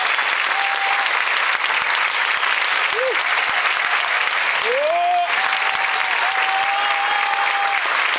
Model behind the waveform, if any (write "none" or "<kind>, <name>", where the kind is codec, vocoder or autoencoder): none